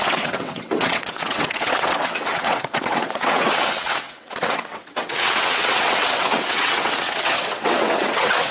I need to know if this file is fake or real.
fake